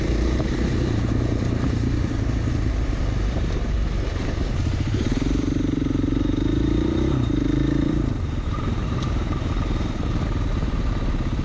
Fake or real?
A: fake